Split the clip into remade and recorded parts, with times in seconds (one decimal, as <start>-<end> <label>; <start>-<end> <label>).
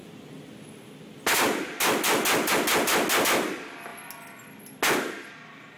0.0-5.8 recorded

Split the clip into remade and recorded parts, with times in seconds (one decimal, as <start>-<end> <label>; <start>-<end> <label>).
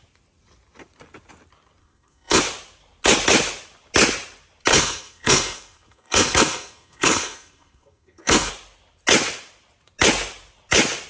0.0-1.8 recorded; 1.8-2.4 remade; 2.4-4.7 recorded; 4.7-8.5 remade; 8.5-11.1 recorded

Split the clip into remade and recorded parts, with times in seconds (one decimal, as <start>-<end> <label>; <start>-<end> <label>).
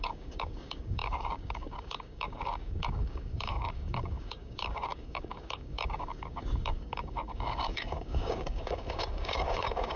0.0-10.0 remade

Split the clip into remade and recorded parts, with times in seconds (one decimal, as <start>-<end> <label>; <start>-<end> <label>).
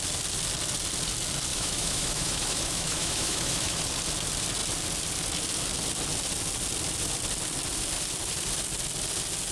0.0-1.5 recorded; 1.5-3.8 remade; 3.8-9.5 recorded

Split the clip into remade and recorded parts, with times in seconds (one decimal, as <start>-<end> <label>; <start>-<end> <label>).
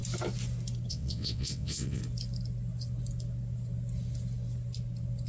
0.0-0.9 recorded; 0.9-2.0 remade; 2.0-5.3 recorded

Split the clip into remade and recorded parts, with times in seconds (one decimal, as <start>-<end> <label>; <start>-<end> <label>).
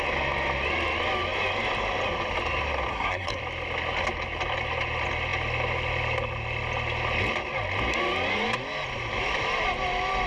0.0-2.9 recorded; 2.9-3.4 remade; 3.4-10.3 recorded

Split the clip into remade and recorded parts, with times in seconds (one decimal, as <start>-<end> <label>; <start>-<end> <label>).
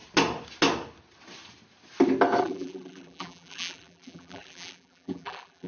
0.0-2.4 recorded; 2.4-5.7 remade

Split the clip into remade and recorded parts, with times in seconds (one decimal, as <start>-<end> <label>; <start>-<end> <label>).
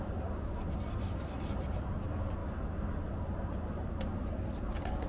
0.0-5.1 recorded